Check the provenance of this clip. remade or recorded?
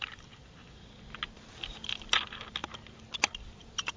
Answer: recorded